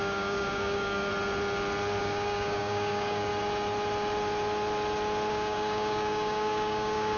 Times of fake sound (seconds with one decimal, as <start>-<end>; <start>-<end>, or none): 0.0-1.1; 2.0-3.3; 5.3-7.2